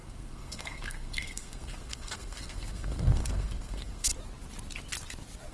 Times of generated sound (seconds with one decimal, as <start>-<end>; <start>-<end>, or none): 0.0-4.1